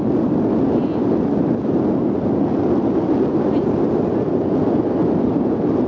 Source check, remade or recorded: recorded